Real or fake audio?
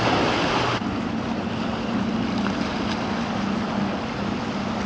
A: real